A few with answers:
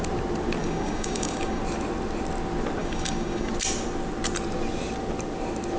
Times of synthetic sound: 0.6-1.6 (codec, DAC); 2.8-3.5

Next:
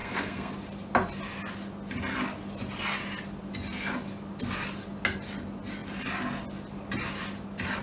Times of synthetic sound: 0.0-0.5 (codec, SNAC)

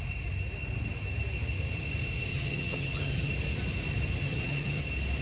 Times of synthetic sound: 2.3-3.3 (vocoder, HiFi-GAN); 4.2-4.8

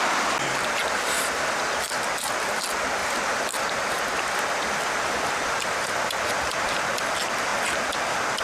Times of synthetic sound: 3.0-6.5 (vocoder, BigVGAN v2)